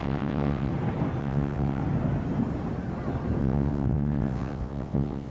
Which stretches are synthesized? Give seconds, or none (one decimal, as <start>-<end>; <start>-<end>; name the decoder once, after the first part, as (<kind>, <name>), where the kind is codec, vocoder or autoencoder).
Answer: 0.0-0.7 (vocoder, WaveNeXt); 1.2-1.8; 3.4-5.3